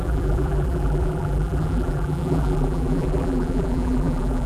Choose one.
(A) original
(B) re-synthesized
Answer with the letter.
B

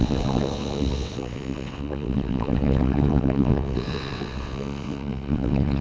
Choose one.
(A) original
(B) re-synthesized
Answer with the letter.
B